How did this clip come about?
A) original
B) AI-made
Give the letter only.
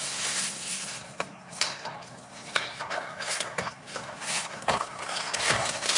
B